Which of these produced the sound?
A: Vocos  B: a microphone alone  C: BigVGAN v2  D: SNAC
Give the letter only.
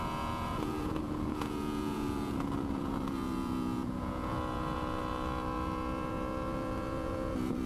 A